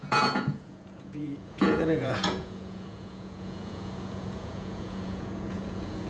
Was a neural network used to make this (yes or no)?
yes